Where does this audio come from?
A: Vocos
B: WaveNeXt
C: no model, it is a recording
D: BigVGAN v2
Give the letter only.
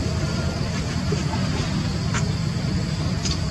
C